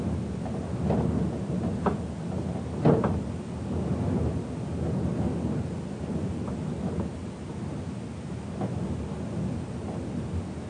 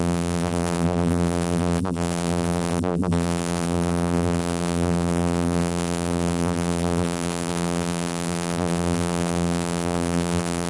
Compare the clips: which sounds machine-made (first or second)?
second